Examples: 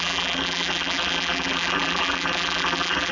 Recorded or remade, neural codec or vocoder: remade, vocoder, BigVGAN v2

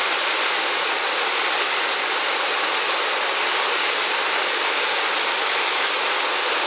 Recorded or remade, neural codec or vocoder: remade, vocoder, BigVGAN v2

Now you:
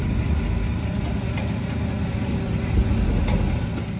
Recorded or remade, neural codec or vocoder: recorded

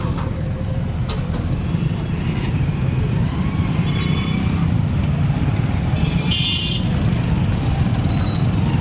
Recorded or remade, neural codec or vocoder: recorded